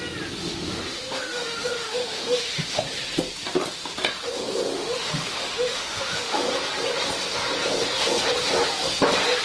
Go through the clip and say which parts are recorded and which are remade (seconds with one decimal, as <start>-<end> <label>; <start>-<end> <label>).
0.0-0.4 recorded; 0.4-2.8 remade; 2.8-4.7 recorded; 4.7-6.5 remade; 6.5-9.4 recorded